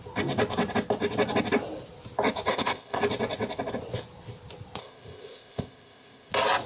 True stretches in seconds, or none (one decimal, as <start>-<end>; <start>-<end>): 0.0-2.5; 3.0-4.8; 6.3-6.7